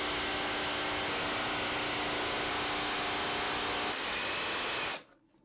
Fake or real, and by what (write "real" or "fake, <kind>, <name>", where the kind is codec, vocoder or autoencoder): real